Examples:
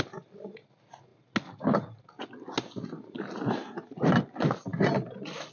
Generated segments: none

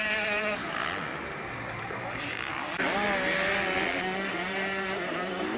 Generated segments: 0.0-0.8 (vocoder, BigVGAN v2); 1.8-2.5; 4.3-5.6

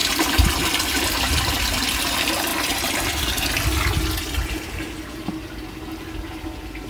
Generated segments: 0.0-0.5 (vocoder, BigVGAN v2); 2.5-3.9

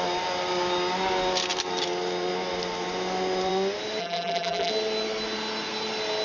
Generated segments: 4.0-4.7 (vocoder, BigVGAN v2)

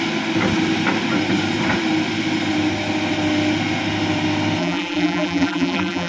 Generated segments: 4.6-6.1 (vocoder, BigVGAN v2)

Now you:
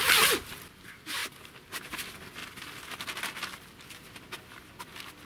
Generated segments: 1.2-1.7 (vocoder, BigVGAN v2); 2.4-4.8

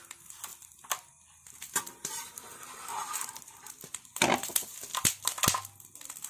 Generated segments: 2.9-4.5 (vocoder, BigVGAN v2)

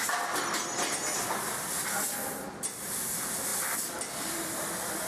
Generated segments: 3.5-5.1 (vocoder, BigVGAN v2)